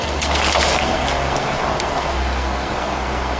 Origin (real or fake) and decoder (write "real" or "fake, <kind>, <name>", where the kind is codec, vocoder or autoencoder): fake, codec, SNAC